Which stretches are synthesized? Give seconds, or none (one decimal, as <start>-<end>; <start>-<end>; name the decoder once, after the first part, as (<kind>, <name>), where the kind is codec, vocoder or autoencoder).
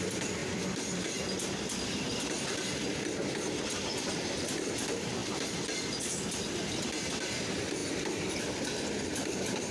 0.4-3.0 (vocoder, BigVGAN v2); 7.8-8.4